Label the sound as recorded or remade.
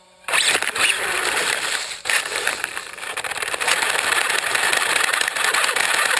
remade